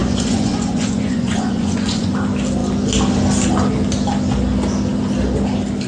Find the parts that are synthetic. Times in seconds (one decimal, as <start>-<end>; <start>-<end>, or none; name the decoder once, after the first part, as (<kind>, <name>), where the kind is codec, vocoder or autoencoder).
0.0-2.1 (vocoder, Vocos)